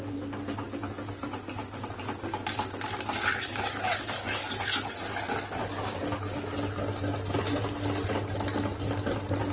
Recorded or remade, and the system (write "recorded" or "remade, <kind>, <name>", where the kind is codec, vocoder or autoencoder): recorded